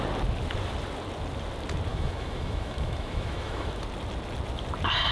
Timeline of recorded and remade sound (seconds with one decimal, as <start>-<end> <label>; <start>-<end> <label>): 0.0-1.9 recorded; 1.9-3.8 remade; 3.8-5.1 recorded